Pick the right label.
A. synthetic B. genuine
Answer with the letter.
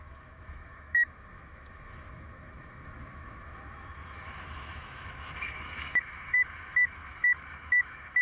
A